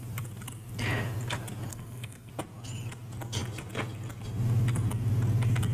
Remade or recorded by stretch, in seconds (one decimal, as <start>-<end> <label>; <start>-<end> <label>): 0.0-1.7 recorded; 1.7-2.3 remade; 2.3-5.7 recorded

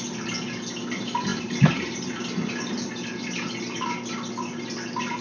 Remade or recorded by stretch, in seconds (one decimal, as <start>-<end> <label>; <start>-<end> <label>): 0.0-1.3 recorded; 1.3-2.1 remade; 2.1-5.2 recorded

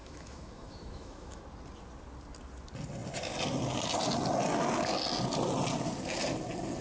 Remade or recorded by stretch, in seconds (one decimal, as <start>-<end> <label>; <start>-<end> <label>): 0.0-1.4 remade; 1.4-6.8 recorded

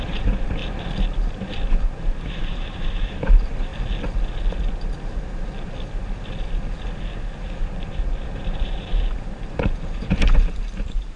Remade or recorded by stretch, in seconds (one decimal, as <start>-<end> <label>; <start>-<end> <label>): 0.0-0.6 remade; 0.6-1.7 recorded; 1.7-3.7 remade; 3.7-7.7 recorded; 7.7-11.2 remade